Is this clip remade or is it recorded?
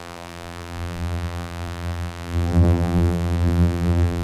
remade